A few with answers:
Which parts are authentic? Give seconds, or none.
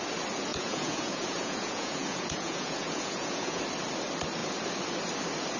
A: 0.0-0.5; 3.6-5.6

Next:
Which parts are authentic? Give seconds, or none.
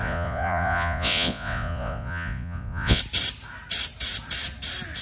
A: 3.0-5.0